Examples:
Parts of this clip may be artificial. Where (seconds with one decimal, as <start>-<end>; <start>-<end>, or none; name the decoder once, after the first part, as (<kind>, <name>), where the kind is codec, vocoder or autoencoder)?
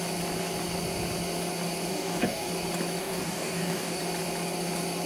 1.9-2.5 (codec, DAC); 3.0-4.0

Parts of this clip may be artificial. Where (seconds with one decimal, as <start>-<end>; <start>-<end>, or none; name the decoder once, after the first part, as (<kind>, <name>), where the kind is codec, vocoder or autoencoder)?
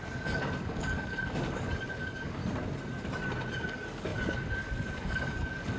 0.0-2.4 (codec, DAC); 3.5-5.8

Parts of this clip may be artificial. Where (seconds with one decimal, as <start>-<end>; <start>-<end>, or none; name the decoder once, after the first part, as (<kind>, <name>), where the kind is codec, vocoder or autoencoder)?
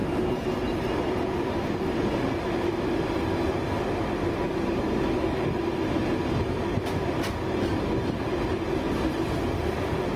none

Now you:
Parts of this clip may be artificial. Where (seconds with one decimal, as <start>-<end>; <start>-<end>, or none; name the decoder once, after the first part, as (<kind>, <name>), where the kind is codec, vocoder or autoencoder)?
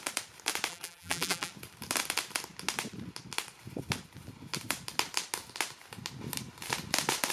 0.7-1.5 (vocoder, BigVGAN v2)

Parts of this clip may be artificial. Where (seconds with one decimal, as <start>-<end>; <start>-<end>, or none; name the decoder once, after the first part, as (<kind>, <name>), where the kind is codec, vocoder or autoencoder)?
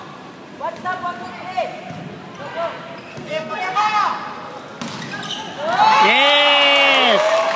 3.1-3.8 (codec, SNAC)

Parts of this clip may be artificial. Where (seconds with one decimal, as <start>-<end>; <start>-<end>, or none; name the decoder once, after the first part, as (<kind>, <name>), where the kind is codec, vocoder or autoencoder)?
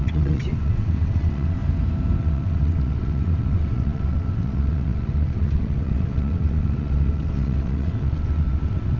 0.0-1.6 (vocoder, WaveNeXt); 2.2-9.0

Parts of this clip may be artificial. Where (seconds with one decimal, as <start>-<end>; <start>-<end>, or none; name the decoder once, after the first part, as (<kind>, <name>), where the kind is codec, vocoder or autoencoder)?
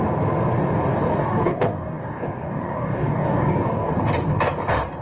0.9-3.9 (codec, DAC)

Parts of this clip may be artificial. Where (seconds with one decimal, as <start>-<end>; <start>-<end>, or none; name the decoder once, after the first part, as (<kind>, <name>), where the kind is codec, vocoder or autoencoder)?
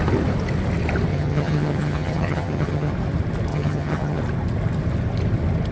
1.1-2.9 (vocoder, HiFi-GAN); 3.5-4.2